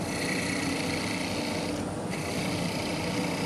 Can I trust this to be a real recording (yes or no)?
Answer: yes